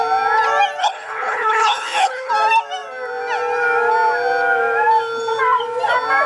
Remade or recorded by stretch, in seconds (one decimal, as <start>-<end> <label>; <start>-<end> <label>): 0.0-0.8 recorded; 0.8-2.3 remade; 2.3-6.3 recorded